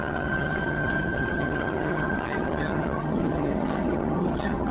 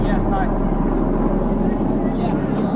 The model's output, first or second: first